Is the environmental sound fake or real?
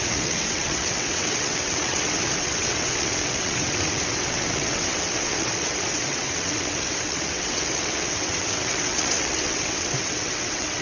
fake